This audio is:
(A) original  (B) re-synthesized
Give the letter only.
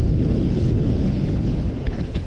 B